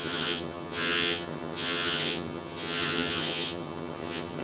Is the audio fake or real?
fake